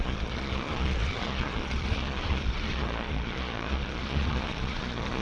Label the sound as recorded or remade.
remade